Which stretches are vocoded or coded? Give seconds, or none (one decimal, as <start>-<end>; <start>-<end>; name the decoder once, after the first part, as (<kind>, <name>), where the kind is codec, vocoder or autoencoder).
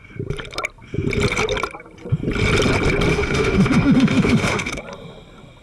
3.1-4.8 (autoencoder, DAC-VAE)